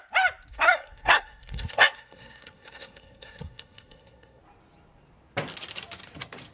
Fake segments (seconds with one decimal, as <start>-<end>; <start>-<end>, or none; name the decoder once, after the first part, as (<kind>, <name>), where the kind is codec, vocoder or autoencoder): 0.5-4.4 (codec, SNAC)